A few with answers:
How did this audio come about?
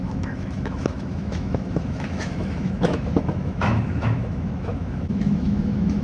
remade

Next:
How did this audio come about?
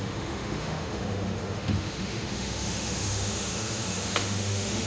remade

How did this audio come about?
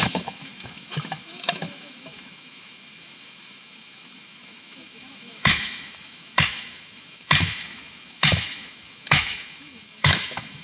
remade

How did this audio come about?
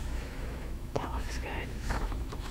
remade